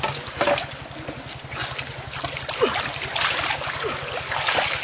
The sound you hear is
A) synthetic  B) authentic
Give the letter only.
B